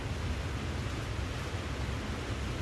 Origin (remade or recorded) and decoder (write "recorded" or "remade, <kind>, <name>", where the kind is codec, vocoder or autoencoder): recorded